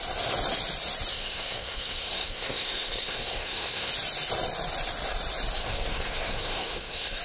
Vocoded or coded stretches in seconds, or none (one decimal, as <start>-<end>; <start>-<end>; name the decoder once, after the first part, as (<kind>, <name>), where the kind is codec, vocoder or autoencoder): 1.1-3.9 (codec, SNAC); 5.6-7.2